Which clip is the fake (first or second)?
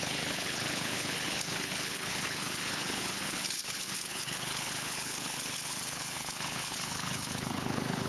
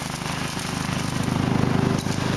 first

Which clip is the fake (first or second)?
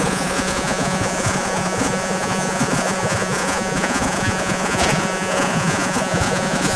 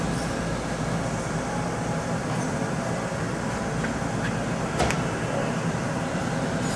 first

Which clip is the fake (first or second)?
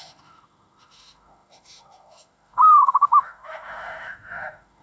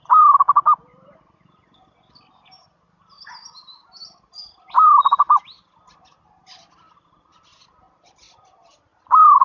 first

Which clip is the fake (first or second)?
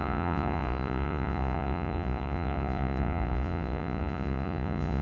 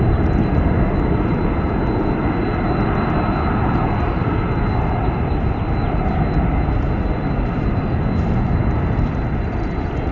first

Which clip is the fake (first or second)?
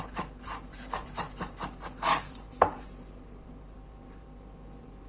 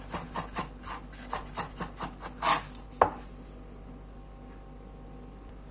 first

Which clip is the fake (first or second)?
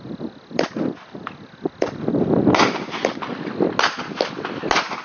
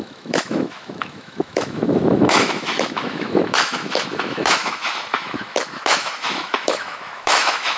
second